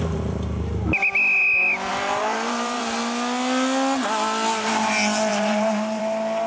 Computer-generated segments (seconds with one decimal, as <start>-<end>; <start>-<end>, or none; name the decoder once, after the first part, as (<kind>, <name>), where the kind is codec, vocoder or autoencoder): 1.9-2.8 (vocoder, BigVGAN v2); 5.3-6.0